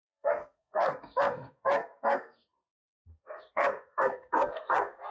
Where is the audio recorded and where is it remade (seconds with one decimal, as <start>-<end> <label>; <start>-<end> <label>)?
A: 0.0-5.1 remade